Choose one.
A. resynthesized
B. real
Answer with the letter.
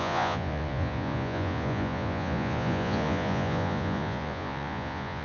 A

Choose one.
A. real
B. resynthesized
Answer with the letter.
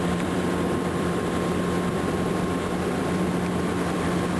B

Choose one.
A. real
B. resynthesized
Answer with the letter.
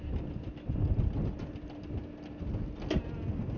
A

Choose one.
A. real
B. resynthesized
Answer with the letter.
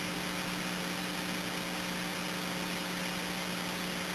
A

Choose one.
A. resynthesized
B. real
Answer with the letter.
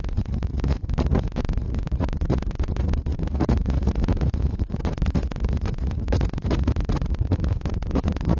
A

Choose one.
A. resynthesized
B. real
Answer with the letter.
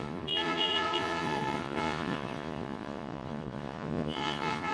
A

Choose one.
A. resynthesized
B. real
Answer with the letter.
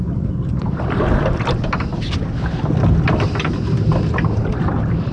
B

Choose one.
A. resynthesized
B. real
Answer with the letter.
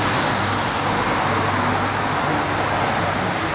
B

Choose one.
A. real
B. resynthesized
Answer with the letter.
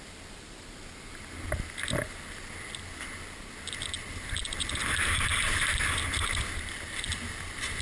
A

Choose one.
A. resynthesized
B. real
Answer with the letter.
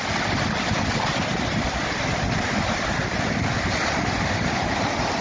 B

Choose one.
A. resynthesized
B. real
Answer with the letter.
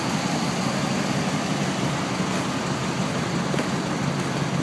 B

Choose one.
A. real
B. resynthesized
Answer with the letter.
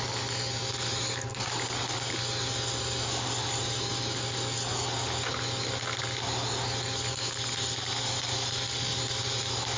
A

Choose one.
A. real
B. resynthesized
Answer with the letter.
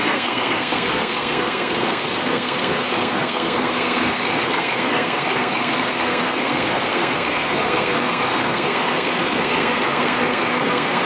B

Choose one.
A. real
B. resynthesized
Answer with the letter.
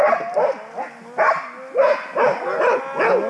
A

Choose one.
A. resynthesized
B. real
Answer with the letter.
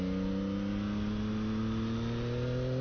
B